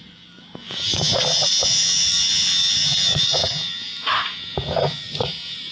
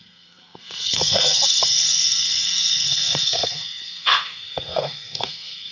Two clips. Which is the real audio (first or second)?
first